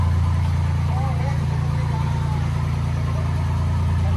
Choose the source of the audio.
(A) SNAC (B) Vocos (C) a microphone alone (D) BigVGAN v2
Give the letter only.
C